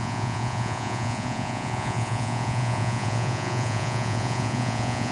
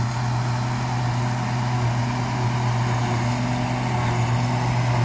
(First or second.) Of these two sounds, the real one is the second